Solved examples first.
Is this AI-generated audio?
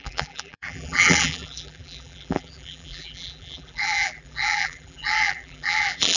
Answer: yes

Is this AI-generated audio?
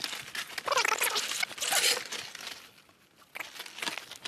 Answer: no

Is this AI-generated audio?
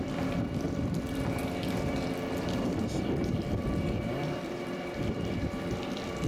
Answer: yes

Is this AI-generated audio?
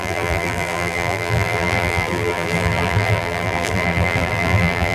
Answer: yes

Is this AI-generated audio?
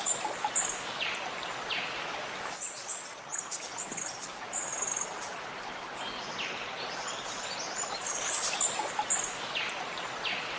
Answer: no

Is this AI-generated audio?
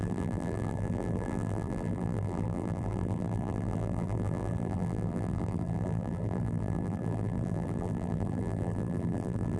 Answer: yes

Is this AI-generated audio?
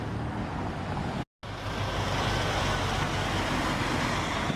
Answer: no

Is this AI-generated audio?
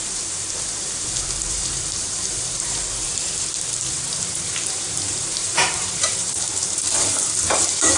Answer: yes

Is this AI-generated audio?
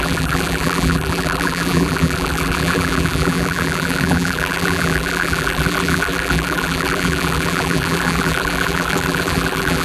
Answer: yes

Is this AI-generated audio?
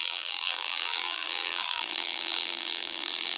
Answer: yes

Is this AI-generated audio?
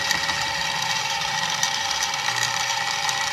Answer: yes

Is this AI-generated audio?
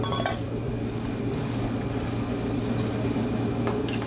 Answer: no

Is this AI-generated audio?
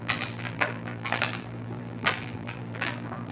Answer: yes